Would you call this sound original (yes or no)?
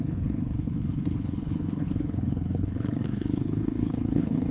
no